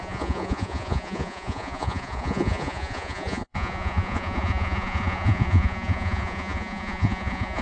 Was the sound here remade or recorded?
remade